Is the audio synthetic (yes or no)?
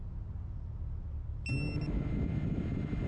no